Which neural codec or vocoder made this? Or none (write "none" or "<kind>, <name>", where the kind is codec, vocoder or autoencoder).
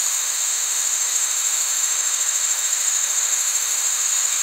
autoencoder, DAC-VAE